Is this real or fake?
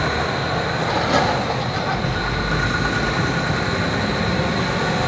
real